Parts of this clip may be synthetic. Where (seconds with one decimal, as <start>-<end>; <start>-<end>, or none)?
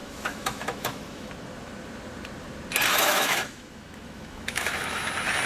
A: 0.0-1.3; 2.9-5.1